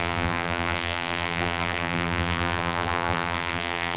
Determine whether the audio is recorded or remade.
remade